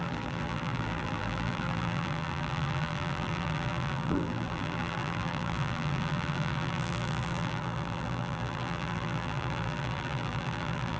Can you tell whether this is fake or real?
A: fake